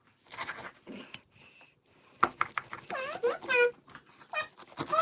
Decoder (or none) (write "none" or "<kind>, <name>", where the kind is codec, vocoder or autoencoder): none